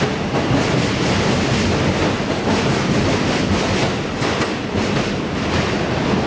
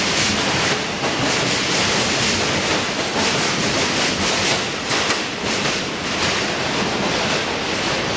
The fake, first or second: second